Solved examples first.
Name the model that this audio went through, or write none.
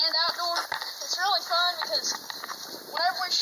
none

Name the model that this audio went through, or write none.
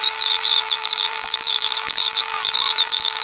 vocoder, BigVGAN v2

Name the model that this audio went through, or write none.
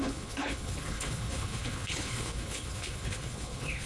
codec, HILCodec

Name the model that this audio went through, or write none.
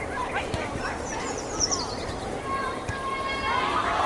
vocoder, BigVGAN v2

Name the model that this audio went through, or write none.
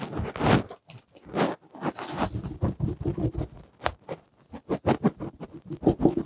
none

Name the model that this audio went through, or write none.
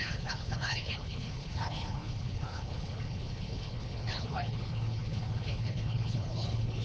codec, HILCodec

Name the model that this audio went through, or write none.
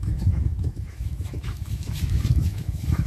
autoencoder, DAC-VAE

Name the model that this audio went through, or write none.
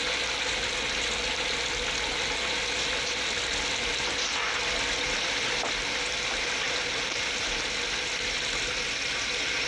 none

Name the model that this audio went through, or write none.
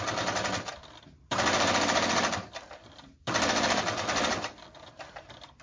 none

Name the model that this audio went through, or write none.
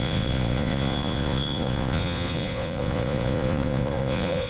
vocoder, Vocos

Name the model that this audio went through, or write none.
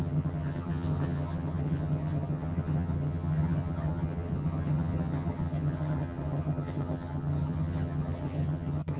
vocoder, HiFi-GAN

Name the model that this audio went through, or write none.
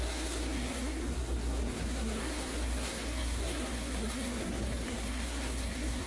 codec, SNAC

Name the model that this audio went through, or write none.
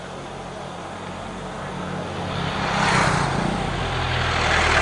none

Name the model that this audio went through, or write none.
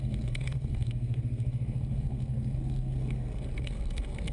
codec, SNAC